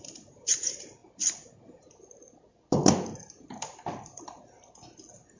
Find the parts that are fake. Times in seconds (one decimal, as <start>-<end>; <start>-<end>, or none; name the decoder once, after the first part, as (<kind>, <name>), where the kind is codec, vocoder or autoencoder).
none